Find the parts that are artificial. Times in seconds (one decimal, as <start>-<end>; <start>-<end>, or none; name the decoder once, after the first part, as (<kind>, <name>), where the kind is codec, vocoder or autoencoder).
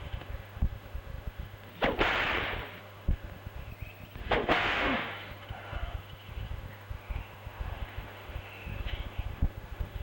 0.0-1.7 (autoencoder, DAC-VAE); 2.8-3.7; 4.2-10.0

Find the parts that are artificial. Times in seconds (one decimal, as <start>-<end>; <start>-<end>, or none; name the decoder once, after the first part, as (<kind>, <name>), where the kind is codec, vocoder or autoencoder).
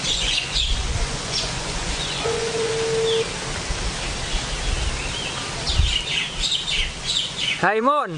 0.0-2.7 (vocoder, Vocos); 7.0-8.2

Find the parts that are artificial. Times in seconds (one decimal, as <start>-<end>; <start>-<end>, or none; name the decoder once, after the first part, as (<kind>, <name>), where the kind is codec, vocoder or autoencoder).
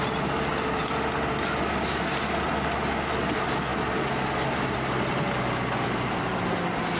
none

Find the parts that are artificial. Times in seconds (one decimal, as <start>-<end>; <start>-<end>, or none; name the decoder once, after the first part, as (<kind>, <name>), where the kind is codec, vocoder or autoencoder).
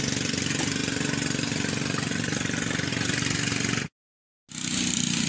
none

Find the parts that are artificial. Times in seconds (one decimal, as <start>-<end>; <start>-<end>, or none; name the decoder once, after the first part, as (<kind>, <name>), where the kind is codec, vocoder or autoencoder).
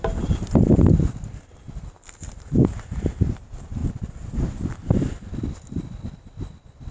none